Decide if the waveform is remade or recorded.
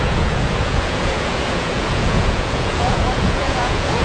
remade